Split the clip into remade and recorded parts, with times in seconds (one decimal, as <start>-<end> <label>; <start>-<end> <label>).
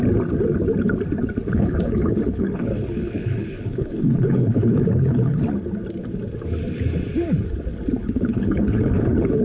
0.0-1.4 recorded; 1.4-5.4 remade; 5.4-8.0 recorded; 8.0-9.4 remade